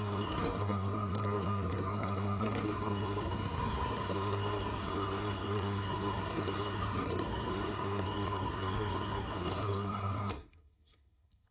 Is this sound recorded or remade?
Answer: remade